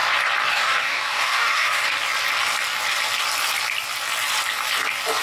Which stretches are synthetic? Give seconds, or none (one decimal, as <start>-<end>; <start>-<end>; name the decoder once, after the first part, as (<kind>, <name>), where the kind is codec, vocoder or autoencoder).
0.5-1.8 (codec, DAC)

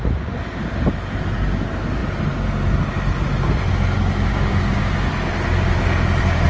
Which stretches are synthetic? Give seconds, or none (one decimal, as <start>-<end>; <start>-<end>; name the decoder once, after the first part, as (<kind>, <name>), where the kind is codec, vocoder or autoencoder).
4.3-4.8 (codec, DAC)

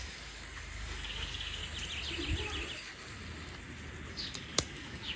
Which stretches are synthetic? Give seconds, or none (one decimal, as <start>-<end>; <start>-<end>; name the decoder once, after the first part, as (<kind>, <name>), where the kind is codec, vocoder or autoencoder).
0.0-1.6 (codec, DAC); 4.1-5.2

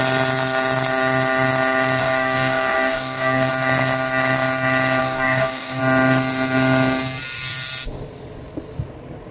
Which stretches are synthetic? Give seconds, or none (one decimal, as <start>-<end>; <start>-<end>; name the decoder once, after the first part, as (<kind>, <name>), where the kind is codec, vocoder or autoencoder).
2.0-3.5 (codec, DAC); 5.0-5.8

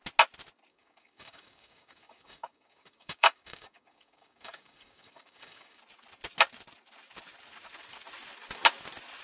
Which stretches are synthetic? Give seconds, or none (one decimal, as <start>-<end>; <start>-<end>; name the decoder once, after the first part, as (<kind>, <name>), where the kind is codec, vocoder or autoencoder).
0.7-5.8 (codec, DAC)

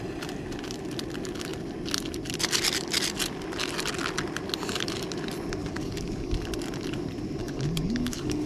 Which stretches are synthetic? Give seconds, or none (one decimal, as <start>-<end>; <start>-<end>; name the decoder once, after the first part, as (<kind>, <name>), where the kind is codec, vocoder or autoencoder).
5.6-6.5 (codec, DAC); 7.4-8.5